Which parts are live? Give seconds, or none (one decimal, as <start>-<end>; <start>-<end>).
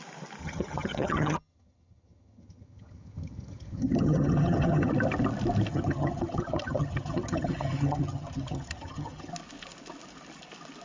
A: 0.0-0.4; 4.9-5.7; 9.3-10.8